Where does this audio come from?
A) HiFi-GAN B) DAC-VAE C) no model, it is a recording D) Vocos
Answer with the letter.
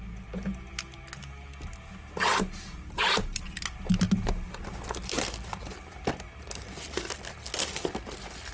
C